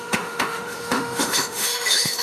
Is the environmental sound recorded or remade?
remade